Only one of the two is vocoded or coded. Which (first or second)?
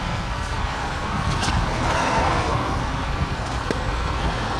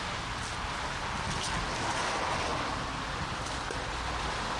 first